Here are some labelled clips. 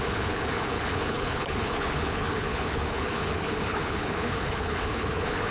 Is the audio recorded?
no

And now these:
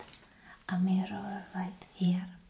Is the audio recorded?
no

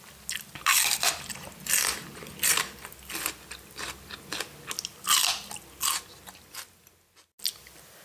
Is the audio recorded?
yes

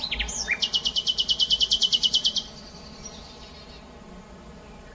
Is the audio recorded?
yes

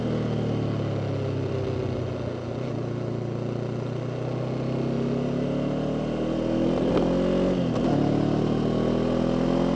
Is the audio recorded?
yes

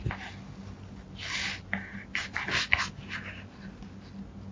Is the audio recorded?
yes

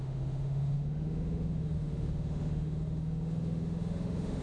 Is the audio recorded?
no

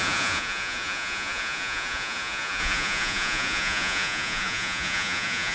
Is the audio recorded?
no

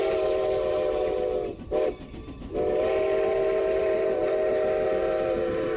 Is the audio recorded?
no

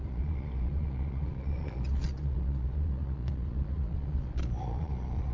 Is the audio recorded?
no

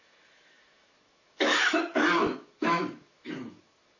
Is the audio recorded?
no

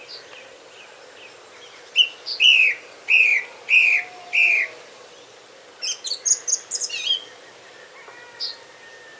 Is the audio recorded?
yes